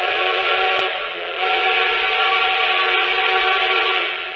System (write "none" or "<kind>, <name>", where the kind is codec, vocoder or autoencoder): vocoder, Vocos